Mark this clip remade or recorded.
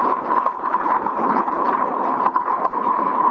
remade